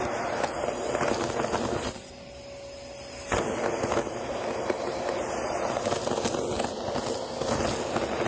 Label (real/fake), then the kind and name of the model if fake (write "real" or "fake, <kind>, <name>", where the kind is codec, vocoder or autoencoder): real